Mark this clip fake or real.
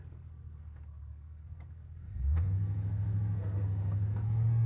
fake